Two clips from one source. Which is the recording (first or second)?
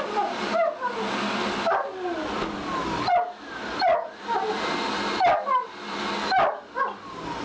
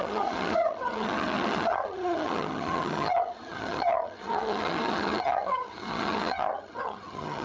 first